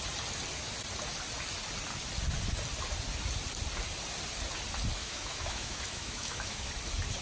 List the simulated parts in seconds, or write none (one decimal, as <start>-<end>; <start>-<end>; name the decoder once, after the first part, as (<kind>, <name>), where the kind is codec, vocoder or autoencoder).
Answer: 5.0-6.7 (autoencoder, DAC-VAE)